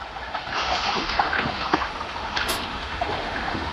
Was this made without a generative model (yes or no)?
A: no